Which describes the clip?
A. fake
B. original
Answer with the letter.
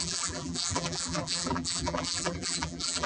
A